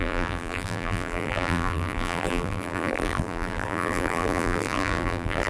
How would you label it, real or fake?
fake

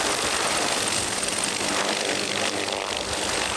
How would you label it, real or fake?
fake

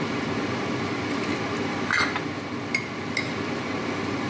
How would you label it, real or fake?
real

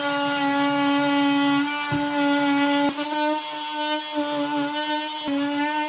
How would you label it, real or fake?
real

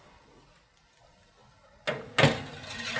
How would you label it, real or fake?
real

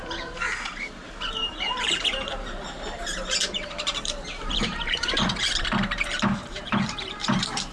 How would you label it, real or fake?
fake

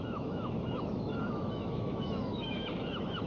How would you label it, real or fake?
fake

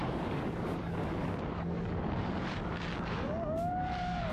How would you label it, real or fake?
fake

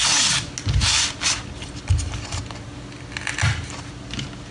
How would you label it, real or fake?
real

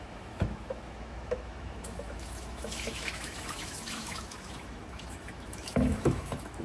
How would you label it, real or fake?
fake